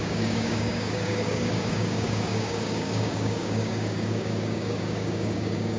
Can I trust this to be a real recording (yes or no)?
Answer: no